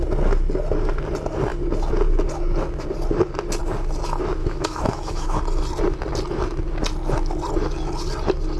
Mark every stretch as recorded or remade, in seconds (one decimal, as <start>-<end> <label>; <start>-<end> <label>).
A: 0.0-4.4 recorded; 4.4-5.4 remade; 5.4-8.6 recorded